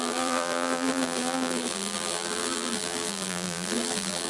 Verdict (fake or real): fake